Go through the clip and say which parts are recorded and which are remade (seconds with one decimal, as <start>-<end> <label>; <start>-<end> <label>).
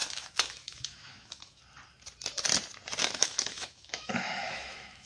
0.0-1.6 remade; 1.6-3.0 recorded; 3.0-5.1 remade